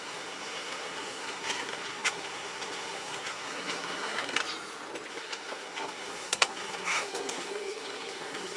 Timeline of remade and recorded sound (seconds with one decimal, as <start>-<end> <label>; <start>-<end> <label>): 0.0-4.4 remade; 4.4-5.1 recorded; 5.1-8.6 remade